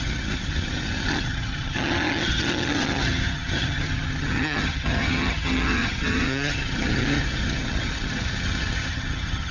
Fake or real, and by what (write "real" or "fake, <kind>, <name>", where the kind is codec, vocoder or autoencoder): fake, vocoder, HiFi-GAN